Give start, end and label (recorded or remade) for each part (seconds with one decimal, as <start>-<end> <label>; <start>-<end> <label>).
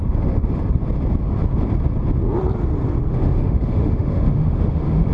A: 0.0-0.6 remade; 0.6-3.1 recorded; 3.1-5.1 remade